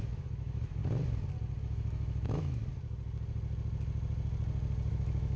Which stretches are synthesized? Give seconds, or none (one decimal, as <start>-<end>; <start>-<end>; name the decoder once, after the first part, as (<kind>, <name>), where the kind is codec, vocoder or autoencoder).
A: 0.0-0.8 (autoencoder, DAC-VAE); 1.6-2.6; 4.9-5.4